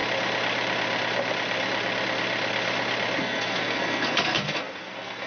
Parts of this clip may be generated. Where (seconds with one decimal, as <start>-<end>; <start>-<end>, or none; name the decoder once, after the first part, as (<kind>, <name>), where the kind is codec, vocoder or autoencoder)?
3.2-5.3 (codec, SNAC)